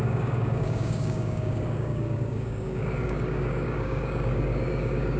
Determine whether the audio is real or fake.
fake